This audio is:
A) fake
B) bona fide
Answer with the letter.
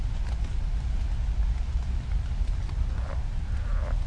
B